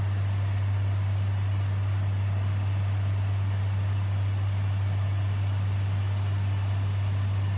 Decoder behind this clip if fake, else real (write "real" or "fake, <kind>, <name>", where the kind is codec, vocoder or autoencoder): real